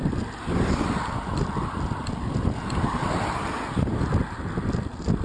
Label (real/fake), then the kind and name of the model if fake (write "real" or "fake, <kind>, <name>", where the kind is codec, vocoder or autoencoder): real